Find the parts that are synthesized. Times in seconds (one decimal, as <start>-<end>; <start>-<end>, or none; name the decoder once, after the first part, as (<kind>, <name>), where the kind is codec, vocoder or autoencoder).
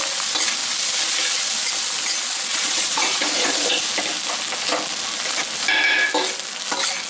2.5-3.8 (vocoder, Vocos)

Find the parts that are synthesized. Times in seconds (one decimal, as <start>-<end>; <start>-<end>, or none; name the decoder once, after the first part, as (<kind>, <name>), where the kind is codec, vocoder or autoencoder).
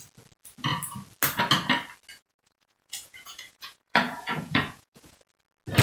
2.1-5.2 (vocoder, Vocos)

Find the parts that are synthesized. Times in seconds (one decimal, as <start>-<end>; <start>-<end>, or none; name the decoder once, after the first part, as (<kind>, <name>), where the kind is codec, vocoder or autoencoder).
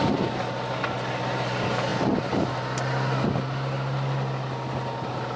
none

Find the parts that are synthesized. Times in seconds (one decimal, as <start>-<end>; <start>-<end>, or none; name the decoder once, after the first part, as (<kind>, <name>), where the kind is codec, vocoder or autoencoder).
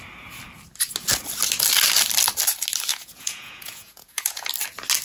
2.9-4.5 (vocoder, Vocos)